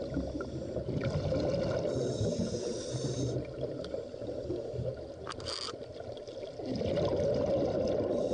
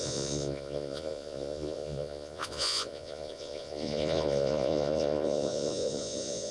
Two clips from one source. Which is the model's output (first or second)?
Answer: second